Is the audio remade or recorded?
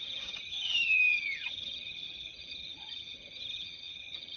remade